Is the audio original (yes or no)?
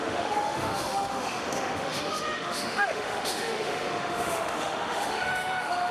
no